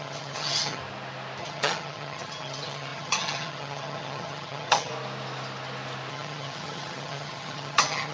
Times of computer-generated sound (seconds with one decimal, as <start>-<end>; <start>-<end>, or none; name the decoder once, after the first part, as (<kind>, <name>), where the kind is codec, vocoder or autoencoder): 0.0-0.8 (vocoder, HiFi-GAN); 1.4-4.9; 6.1-8.1